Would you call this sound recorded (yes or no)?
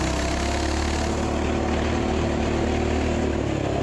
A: yes